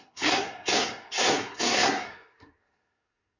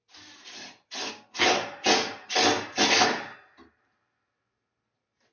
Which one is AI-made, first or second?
first